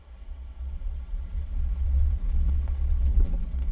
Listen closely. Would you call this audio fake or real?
fake